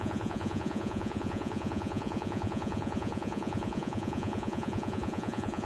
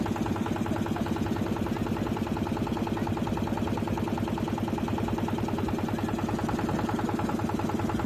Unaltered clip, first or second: second